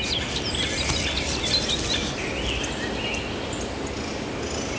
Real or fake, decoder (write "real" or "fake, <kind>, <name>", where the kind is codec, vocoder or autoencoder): real